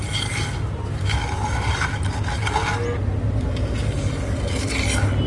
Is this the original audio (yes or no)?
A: yes